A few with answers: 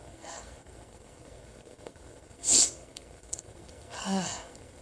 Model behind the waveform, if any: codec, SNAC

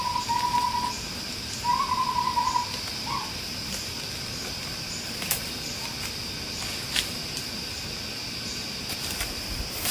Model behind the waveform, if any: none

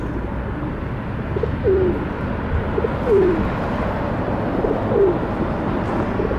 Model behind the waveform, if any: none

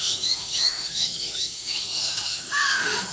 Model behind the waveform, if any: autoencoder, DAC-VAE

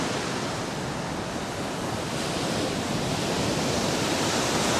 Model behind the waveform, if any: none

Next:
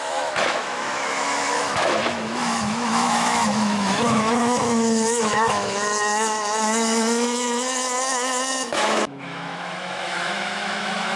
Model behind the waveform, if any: autoencoder, DAC-VAE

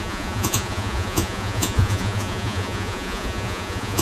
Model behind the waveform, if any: vocoder, Vocos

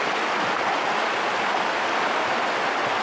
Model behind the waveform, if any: none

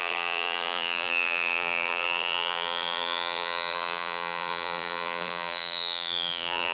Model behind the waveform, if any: vocoder, BigVGAN v2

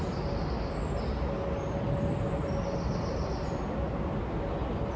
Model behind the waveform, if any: none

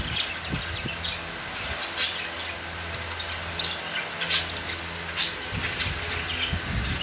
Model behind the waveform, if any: none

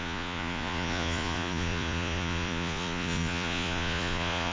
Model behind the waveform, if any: vocoder, Vocos